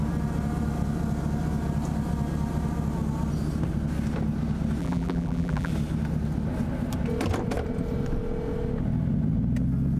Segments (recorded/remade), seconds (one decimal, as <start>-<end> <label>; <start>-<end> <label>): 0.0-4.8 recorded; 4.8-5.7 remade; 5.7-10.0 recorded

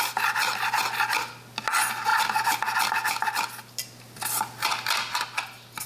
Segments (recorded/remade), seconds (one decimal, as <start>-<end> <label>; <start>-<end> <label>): 0.0-5.9 recorded

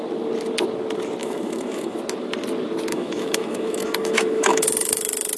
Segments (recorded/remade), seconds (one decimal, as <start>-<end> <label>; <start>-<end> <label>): 0.0-1.2 recorded; 1.2-2.0 remade; 2.0-2.9 recorded; 2.9-5.0 remade; 5.0-5.4 recorded

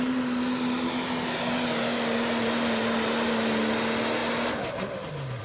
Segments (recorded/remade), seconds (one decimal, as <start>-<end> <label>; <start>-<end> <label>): 0.0-5.4 recorded

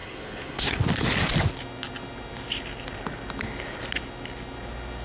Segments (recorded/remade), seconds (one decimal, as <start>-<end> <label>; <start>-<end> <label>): 0.0-0.8 remade; 0.8-5.0 recorded

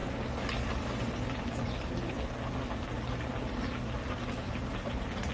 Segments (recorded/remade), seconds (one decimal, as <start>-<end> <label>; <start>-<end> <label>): 0.0-4.0 recorded; 4.0-5.3 remade

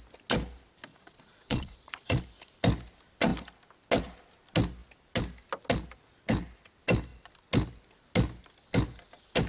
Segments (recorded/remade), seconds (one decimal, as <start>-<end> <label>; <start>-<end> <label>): 0.0-0.9 recorded; 0.9-2.2 remade; 2.2-9.5 recorded

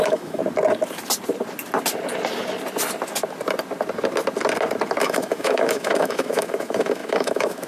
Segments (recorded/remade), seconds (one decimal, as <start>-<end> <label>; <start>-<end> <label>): 0.0-0.4 remade; 0.4-5.0 recorded; 5.0-7.7 remade